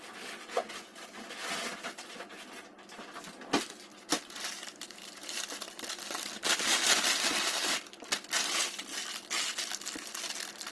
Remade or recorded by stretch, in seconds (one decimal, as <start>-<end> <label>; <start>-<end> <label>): 0.0-3.9 recorded; 3.9-5.8 remade; 5.8-10.7 recorded

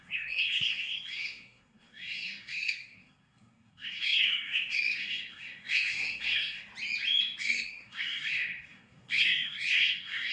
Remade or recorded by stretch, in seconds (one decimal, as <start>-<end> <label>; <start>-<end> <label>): 0.0-6.7 remade; 6.7-7.4 recorded; 7.4-10.3 remade

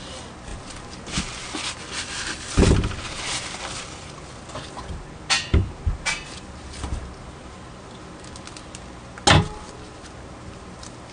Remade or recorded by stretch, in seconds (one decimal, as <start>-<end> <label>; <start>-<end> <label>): 0.0-11.1 recorded

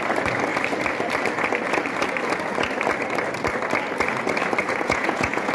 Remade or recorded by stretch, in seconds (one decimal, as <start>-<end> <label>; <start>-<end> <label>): 0.0-4.6 recorded; 4.6-5.5 remade